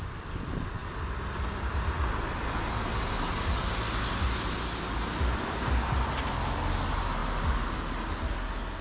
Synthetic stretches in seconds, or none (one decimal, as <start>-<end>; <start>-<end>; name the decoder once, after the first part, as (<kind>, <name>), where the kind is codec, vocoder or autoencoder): none